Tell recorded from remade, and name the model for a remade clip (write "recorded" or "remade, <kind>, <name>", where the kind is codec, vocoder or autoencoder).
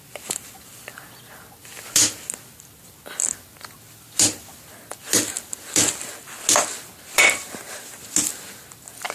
recorded